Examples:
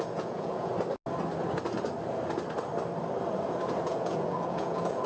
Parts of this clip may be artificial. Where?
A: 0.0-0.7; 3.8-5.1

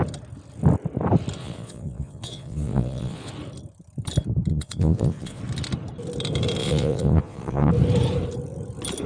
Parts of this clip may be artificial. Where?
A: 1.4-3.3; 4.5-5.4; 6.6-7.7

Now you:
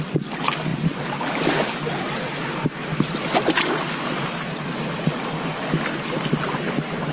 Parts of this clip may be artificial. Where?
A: none